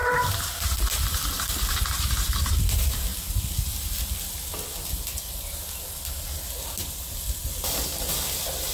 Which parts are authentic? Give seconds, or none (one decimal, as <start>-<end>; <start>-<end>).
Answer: 0.0-8.7